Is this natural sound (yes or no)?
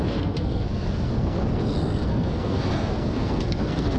no